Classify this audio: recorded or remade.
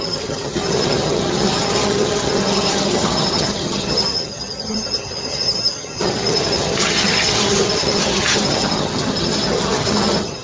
remade